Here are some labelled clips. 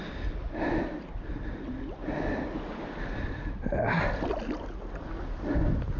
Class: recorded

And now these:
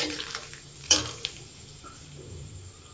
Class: remade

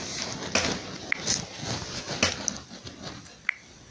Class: recorded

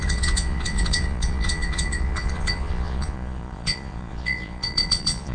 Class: remade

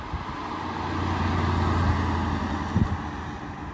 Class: recorded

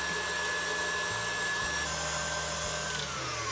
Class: recorded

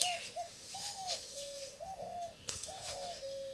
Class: remade